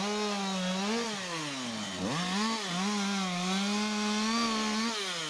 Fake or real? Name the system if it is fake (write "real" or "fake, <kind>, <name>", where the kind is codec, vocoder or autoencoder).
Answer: real